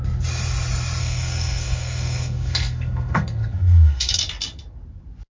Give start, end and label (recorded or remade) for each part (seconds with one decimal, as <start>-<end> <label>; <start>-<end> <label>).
0.0-1.0 recorded; 1.0-4.2 remade; 4.2-5.4 recorded